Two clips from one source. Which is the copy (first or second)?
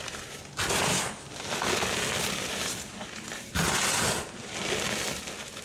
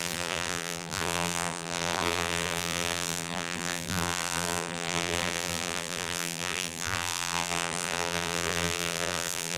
second